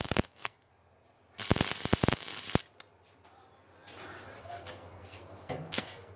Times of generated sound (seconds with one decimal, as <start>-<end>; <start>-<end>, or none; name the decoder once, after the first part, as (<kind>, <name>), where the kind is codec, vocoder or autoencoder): 0.0-0.7 (codec, SNAC); 4.4-6.2